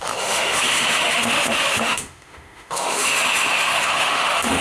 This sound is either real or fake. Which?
fake